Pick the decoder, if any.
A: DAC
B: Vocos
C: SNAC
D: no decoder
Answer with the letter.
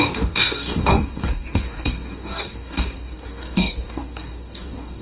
A